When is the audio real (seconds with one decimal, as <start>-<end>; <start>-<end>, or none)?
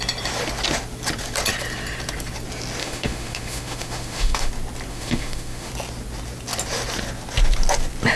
0.0-2.8; 4.5-4.9; 5.7-8.2